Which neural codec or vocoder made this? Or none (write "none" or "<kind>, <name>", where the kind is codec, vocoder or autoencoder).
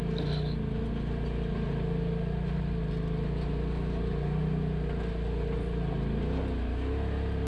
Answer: none